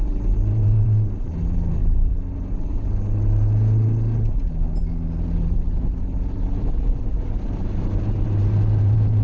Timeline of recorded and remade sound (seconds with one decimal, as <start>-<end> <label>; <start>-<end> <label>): 0.0-1.8 remade; 1.8-5.4 recorded; 5.4-9.2 remade